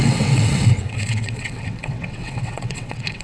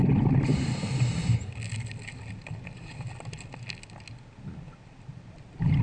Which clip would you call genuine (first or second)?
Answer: second